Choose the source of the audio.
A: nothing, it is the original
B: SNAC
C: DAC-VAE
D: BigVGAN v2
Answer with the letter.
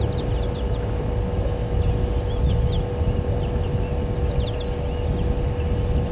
A